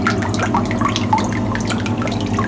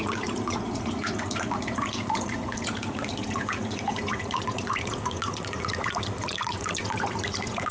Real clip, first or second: first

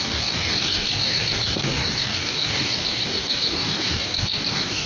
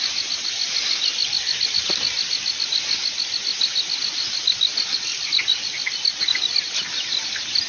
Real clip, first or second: second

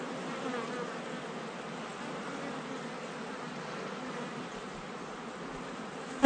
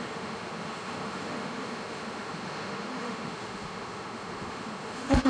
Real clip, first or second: first